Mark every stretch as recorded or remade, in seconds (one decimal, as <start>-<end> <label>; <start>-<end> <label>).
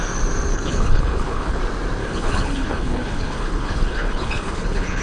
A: 0.0-0.5 recorded; 0.5-1.6 remade; 1.6-2.0 recorded; 2.0-5.0 remade